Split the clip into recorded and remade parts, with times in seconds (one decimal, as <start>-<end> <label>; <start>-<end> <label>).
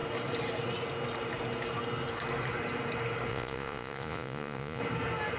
0.0-3.3 recorded; 3.3-4.8 remade; 4.8-5.4 recorded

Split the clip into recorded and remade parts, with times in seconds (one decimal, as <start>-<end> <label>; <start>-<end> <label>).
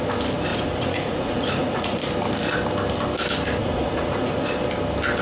0.0-0.5 recorded; 0.5-2.0 remade; 2.0-3.6 recorded; 3.6-4.4 remade; 4.4-5.2 recorded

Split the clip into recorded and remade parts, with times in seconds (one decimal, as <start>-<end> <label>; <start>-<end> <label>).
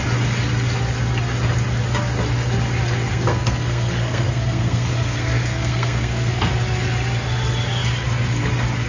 0.0-3.1 recorded; 3.1-6.5 remade; 6.5-8.9 recorded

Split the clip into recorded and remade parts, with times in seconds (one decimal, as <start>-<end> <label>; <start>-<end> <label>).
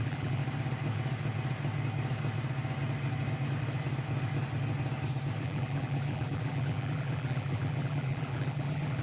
0.0-0.4 remade; 0.4-5.4 recorded; 5.4-9.0 remade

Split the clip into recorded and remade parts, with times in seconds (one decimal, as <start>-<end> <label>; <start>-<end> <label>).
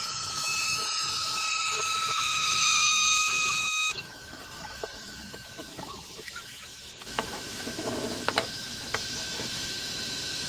0.0-10.5 remade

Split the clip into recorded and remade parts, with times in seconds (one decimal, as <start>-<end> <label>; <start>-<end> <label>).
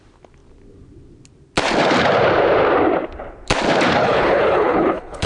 0.0-4.0 recorded; 4.0-5.3 remade